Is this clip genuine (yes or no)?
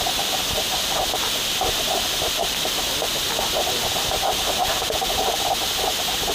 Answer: no